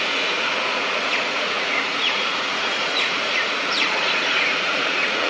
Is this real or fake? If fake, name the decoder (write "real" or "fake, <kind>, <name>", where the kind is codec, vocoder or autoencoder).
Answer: fake, vocoder, Vocos